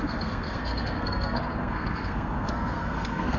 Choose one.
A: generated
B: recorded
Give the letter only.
A